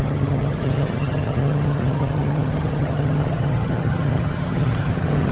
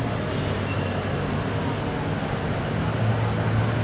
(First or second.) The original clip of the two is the second